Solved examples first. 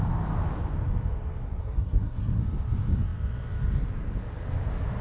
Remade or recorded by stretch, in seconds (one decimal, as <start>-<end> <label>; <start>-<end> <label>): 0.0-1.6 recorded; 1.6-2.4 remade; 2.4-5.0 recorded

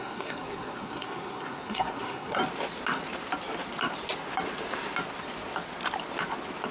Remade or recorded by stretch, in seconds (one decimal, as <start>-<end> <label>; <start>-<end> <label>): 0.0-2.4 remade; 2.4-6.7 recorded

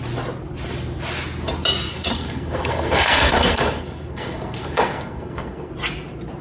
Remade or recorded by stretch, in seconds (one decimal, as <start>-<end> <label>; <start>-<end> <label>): 0.0-1.9 recorded; 1.9-5.7 remade; 5.7-6.4 recorded

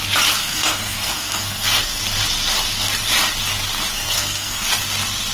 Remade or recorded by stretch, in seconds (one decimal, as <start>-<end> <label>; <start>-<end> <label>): 0.0-0.4 recorded; 0.4-2.0 remade; 2.0-3.9 recorded; 3.9-4.7 remade; 4.7-5.3 recorded